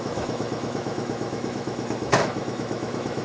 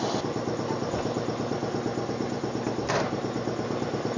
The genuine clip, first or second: second